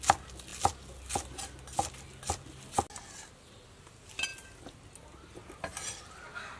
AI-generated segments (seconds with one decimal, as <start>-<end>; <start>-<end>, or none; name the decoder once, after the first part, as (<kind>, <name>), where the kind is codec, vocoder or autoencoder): none